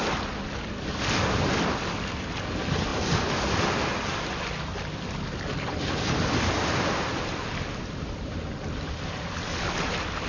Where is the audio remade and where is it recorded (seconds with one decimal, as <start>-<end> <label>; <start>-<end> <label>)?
0.0-10.3 recorded